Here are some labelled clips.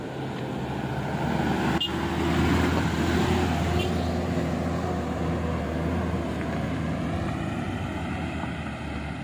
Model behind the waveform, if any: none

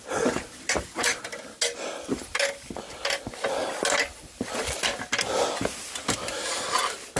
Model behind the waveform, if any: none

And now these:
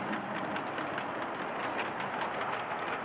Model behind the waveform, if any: none